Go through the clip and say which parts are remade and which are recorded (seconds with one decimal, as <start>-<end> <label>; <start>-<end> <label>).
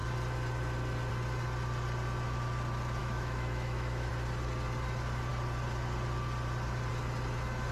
0.0-3.0 recorded; 3.0-4.1 remade; 4.1-7.7 recorded